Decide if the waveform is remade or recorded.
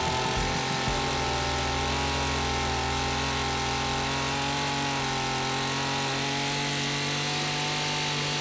recorded